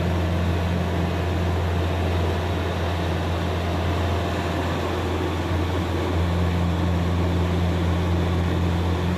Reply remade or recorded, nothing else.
recorded